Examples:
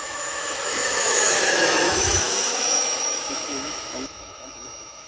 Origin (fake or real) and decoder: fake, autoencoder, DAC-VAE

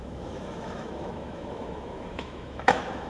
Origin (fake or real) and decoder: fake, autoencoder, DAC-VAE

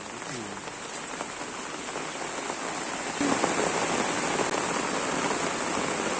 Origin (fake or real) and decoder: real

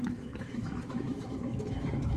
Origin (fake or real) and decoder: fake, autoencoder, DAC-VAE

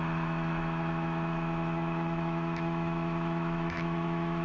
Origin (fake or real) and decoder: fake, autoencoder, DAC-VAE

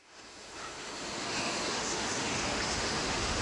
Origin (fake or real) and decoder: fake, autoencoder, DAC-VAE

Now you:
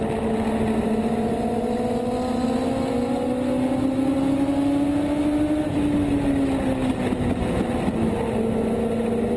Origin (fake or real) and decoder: real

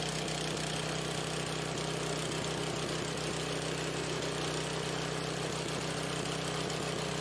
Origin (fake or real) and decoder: real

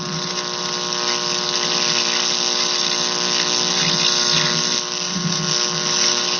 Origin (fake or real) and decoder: real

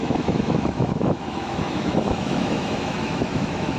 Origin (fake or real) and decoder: fake, autoencoder, DAC-VAE